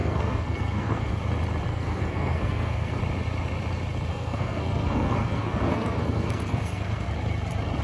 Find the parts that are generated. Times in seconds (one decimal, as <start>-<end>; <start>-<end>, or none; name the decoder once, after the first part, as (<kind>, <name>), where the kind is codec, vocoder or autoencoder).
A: 0.0-1.2 (codec, SNAC); 1.7-3.0; 4.1-7.1